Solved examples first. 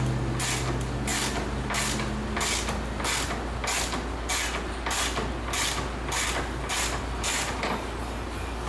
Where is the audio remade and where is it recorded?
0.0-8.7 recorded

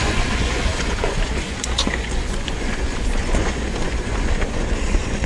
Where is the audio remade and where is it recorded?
0.0-5.3 remade

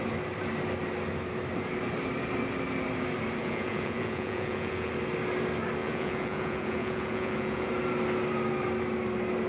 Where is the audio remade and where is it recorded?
0.0-3.4 recorded; 3.4-4.9 remade; 4.9-5.8 recorded; 5.8-7.7 remade; 7.7-9.5 recorded

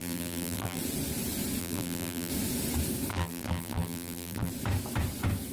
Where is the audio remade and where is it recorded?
0.0-0.8 remade; 0.8-1.6 recorded; 1.6-2.3 remade; 2.3-3.1 recorded; 3.1-4.5 remade; 4.5-5.5 recorded

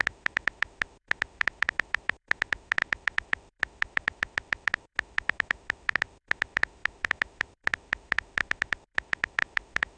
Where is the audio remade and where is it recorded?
0.0-10.0 remade